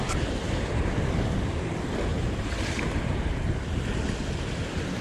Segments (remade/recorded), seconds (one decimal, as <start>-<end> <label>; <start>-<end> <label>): 0.0-2.1 recorded; 2.1-3.2 remade; 3.2-5.0 recorded